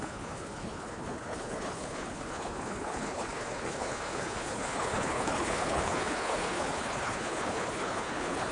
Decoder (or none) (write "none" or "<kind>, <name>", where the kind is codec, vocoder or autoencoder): codec, HILCodec